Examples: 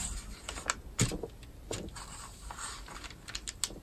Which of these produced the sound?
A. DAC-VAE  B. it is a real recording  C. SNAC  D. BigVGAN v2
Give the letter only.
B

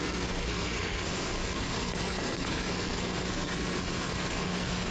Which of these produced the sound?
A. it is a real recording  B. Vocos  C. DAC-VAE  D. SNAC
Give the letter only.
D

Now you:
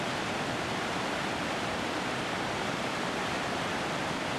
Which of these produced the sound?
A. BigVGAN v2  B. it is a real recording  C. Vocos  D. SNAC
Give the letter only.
A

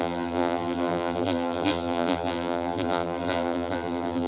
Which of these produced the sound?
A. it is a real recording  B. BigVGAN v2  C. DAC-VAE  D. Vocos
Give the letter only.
B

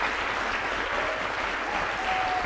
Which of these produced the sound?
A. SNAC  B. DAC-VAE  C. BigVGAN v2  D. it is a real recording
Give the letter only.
D